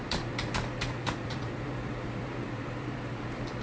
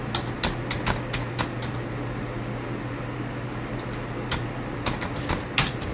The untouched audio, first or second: second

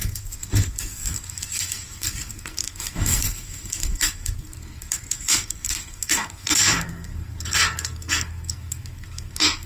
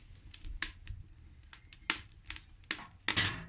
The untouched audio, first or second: second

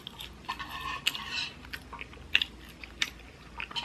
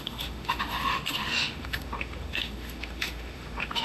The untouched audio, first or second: first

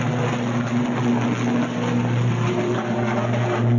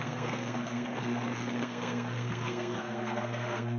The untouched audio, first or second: first